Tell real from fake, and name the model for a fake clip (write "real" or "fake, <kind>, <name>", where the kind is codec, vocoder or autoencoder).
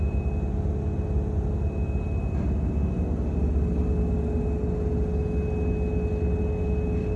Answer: real